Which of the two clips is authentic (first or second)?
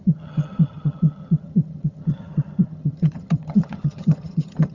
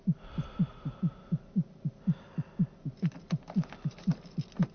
second